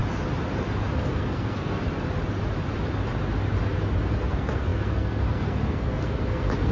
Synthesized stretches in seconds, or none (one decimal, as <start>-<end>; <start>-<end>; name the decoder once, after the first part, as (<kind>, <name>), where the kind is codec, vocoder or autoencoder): 1.1-1.8 (codec, SNAC); 4.2-6.7